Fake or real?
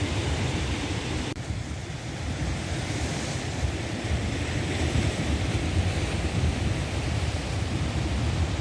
fake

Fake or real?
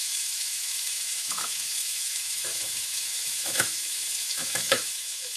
fake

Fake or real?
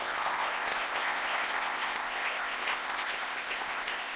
fake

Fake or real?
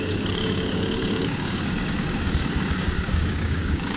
fake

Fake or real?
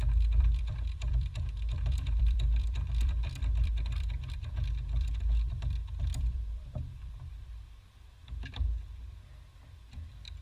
fake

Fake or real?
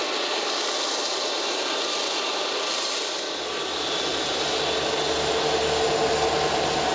real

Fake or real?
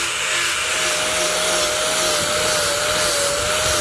real